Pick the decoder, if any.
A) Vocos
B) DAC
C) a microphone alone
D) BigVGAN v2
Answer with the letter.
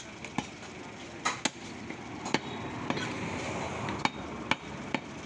C